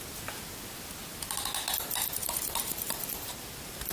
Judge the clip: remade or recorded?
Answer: recorded